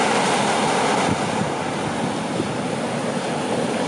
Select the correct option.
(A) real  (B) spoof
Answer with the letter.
A